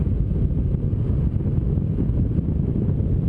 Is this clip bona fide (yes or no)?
yes